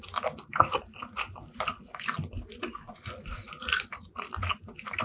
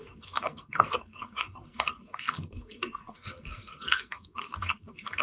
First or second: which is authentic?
first